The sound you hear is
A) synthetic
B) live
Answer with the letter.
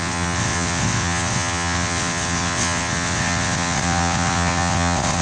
A